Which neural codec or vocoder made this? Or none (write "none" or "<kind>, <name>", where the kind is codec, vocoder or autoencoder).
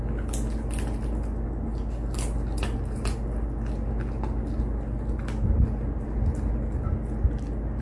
none